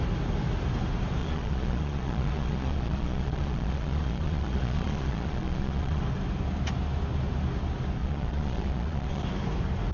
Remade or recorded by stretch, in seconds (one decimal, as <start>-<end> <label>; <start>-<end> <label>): 0.0-1.2 recorded; 1.2-6.0 remade; 6.0-8.0 recorded; 8.0-9.2 remade; 9.2-9.9 recorded